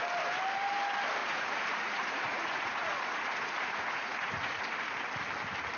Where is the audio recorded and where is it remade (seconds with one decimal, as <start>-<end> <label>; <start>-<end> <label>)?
0.0-1.2 recorded; 1.2-4.6 remade; 4.6-5.8 recorded